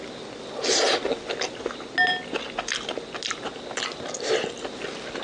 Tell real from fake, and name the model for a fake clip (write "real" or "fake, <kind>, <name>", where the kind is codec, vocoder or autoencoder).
real